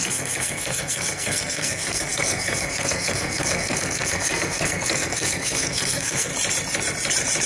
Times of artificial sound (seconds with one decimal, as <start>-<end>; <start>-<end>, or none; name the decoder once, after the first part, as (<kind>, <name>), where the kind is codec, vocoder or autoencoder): 0.0-6.3 (codec, SNAC)